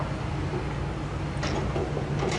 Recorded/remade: recorded